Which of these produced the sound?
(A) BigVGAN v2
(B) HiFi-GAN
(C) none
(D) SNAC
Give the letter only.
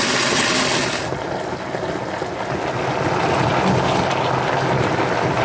C